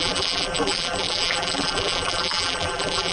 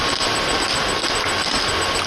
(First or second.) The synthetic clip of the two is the first